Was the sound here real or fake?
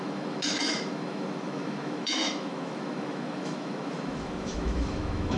fake